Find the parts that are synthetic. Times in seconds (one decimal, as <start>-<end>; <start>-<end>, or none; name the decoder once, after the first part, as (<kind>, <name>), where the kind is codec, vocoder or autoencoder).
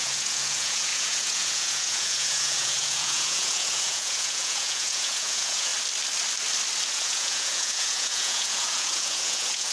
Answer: 0.0-5.7 (vocoder, Vocos); 6.9-9.7